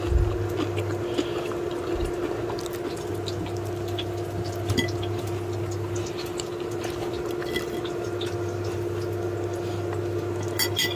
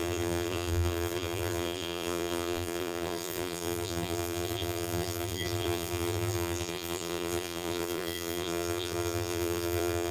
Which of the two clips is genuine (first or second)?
first